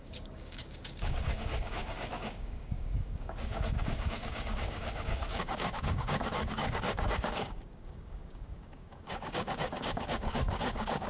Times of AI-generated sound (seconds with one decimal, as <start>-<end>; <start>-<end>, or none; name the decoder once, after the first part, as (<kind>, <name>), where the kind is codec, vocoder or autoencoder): 0.0-11.1 (codec, DAC)